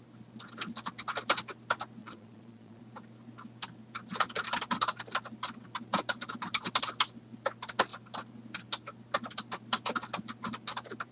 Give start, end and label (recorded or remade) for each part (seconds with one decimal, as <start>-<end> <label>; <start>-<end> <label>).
0.0-2.0 recorded; 2.0-2.8 remade; 2.8-11.1 recorded